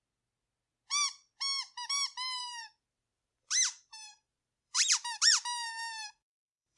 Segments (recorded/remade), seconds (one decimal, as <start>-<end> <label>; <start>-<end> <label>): 0.0-2.4 recorded; 2.4-6.8 remade